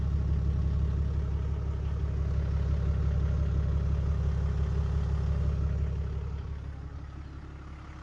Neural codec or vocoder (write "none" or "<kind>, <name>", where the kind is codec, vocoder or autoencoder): none